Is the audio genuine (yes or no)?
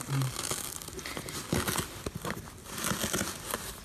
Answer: yes